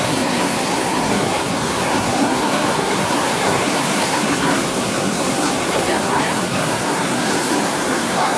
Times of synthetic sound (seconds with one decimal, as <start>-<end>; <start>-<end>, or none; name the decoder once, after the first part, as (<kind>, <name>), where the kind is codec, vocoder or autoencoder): 0.0-8.4 (codec, SNAC)